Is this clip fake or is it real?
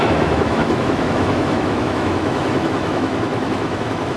fake